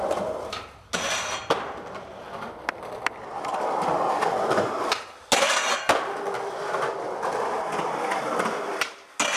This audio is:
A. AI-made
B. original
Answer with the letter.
B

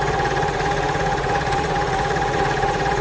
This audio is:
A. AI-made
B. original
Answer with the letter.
A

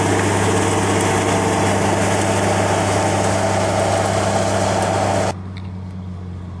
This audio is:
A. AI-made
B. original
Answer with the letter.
B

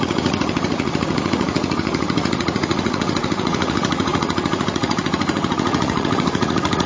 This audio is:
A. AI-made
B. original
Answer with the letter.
A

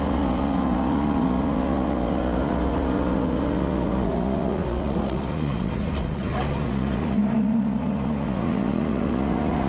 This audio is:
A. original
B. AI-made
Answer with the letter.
B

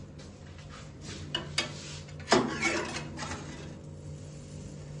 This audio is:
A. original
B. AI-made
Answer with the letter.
A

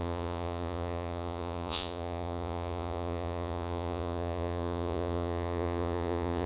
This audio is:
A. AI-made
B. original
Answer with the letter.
A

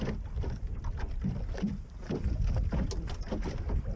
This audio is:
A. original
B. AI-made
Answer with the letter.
A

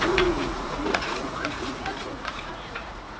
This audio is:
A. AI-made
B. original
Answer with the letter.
A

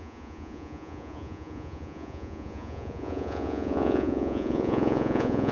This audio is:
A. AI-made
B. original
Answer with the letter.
A